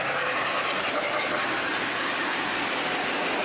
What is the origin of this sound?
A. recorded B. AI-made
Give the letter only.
A